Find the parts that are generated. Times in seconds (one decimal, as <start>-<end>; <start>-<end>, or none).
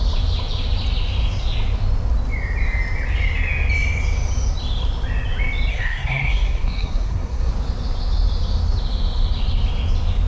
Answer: 5.7-7.5